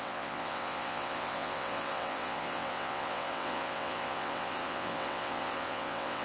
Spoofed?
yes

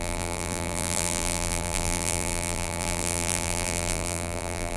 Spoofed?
yes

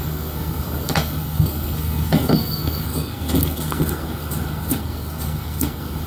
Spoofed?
yes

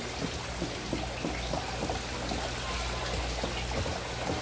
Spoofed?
no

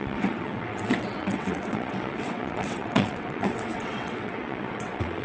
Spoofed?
yes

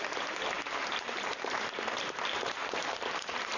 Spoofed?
yes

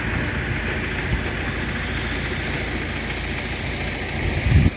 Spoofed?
no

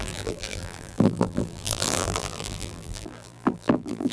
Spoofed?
yes